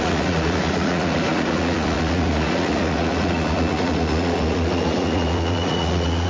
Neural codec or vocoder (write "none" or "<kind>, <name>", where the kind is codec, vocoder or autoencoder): vocoder, Vocos